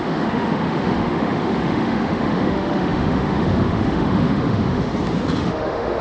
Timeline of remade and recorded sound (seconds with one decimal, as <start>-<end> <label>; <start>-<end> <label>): 0.0-4.9 remade; 4.9-5.4 recorded; 5.4-6.0 remade